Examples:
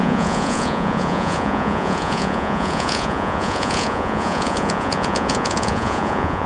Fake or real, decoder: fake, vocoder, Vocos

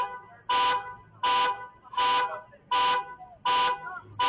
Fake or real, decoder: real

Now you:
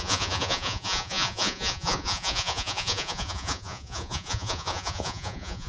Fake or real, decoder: fake, vocoder, Vocos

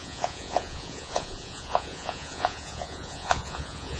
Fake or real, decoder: fake, vocoder, Vocos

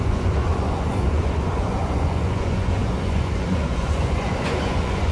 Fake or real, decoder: fake, vocoder, Vocos